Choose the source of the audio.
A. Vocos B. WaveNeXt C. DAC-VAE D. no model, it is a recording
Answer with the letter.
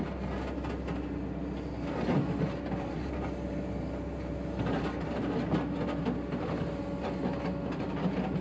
D